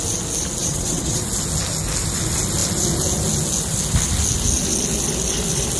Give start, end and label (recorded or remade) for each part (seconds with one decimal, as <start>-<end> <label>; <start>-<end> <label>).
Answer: 0.0-0.6 recorded; 0.6-1.3 remade; 1.3-5.8 recorded